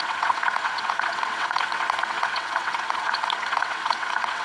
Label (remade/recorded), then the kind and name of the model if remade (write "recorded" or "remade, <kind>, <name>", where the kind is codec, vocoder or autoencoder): remade, vocoder, WaveNeXt